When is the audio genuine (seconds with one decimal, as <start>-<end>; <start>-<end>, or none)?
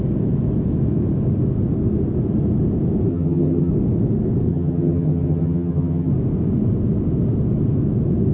0.0-3.1; 3.7-4.5; 6.1-8.3